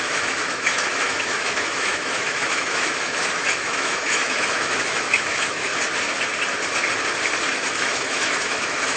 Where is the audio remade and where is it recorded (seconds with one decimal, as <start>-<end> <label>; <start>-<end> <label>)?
0.0-5.7 remade; 5.7-7.5 recorded; 7.5-9.0 remade